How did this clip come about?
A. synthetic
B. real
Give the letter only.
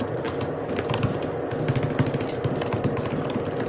B